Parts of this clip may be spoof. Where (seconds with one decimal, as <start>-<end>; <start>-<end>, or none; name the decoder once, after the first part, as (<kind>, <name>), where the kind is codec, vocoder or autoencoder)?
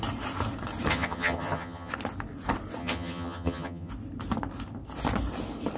0.9-1.9 (vocoder, HiFi-GAN); 2.8-3.9